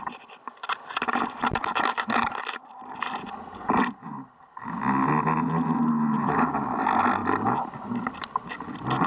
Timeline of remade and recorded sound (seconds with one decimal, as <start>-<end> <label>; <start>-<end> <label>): 0.0-9.1 recorded